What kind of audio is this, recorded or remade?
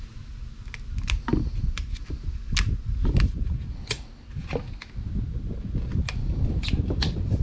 recorded